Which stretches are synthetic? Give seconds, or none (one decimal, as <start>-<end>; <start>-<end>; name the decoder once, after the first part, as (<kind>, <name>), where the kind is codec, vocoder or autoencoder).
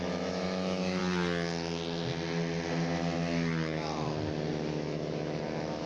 0.0-1.0 (autoencoder, DAC-VAE); 4.5-5.9